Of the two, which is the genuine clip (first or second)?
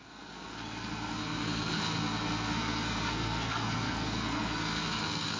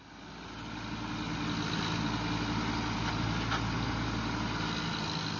second